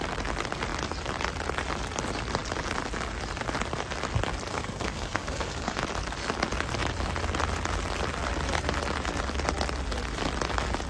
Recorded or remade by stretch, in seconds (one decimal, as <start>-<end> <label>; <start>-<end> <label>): 0.0-4.5 recorded; 4.5-5.8 remade; 5.8-10.9 recorded